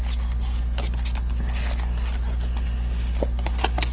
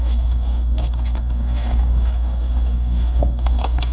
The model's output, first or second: second